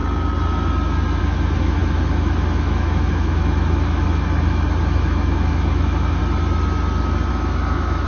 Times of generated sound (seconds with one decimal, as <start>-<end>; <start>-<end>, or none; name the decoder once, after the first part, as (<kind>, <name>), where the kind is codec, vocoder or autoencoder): 1.2-6.2 (autoencoder, DAC-VAE); 7.3-8.1